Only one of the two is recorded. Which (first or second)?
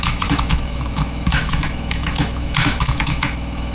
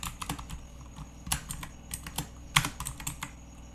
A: second